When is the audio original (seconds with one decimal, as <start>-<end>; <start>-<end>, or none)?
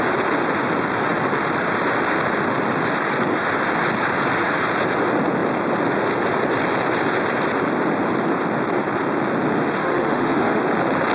0.0-9.8; 10.6-11.1